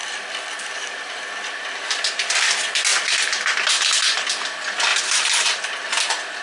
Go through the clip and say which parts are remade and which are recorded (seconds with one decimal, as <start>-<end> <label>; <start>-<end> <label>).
0.0-2.0 remade; 2.0-4.9 recorded; 4.9-5.7 remade; 5.7-6.4 recorded